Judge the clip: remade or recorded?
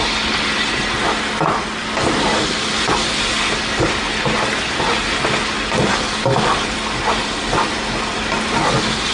recorded